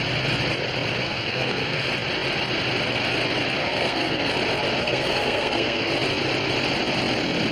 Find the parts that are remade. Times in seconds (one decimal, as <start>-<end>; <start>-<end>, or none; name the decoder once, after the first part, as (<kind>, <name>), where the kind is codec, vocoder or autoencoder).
1.0-1.9 (codec, SNAC); 3.6-4.3; 4.8-5.9